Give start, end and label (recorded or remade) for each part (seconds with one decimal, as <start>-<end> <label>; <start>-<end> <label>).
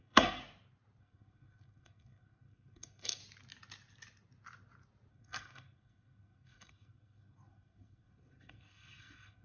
0.0-0.4 remade; 0.4-1.0 recorded; 1.0-3.2 remade; 3.2-5.1 recorded; 5.1-9.4 remade